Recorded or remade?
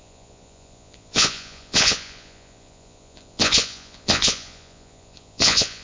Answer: remade